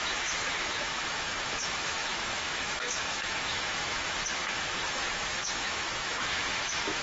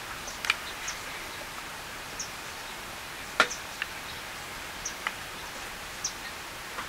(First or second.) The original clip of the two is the second